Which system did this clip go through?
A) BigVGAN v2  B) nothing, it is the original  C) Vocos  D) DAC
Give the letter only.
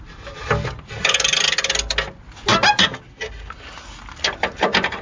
B